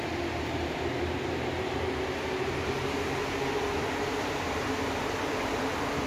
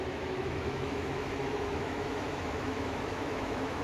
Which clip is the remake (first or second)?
second